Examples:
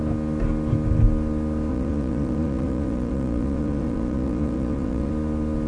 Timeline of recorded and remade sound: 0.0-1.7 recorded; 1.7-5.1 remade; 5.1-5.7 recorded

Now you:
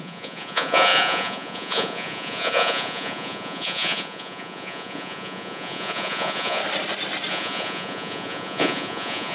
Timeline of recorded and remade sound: 0.0-6.6 remade; 6.6-7.3 recorded; 7.3-9.3 remade

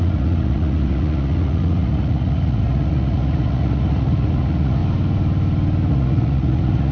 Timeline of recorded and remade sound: 0.0-4.8 remade; 4.8-5.9 recorded; 5.9-6.9 remade

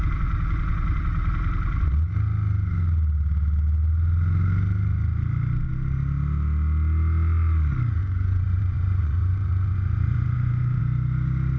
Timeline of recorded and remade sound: 0.0-8.0 recorded; 8.0-10.8 remade; 10.8-11.6 recorded

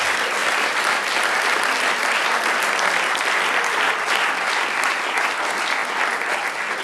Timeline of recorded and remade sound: 0.0-6.8 recorded

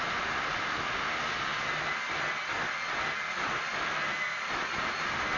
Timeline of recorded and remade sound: 0.0-5.4 recorded

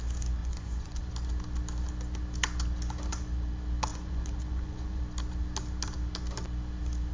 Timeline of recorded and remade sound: 0.0-0.4 recorded; 0.4-1.0 remade; 1.0-3.9 recorded; 3.9-5.0 remade; 5.0-7.1 recorded

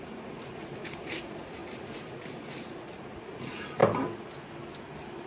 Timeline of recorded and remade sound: 0.0-3.8 remade; 3.8-5.3 recorded